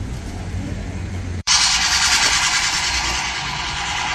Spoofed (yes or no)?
yes